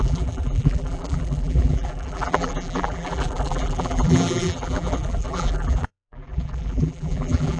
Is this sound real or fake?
fake